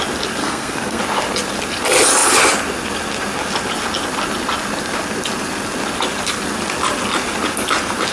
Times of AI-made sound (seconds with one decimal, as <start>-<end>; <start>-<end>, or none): 0.4-1.0